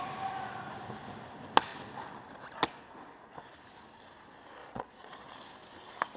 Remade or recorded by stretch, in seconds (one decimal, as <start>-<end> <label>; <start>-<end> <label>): 0.0-4.6 recorded; 4.6-5.3 remade; 5.3-6.2 recorded